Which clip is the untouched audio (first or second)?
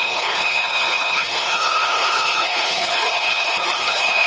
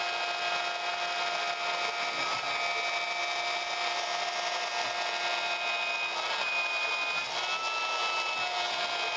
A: second